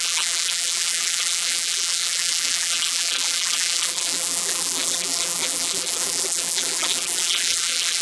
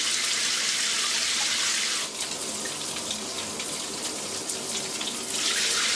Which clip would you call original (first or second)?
second